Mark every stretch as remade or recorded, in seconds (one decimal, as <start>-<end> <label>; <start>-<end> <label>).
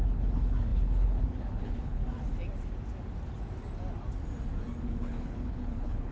0.0-2.0 remade; 2.0-4.8 recorded; 4.8-6.1 remade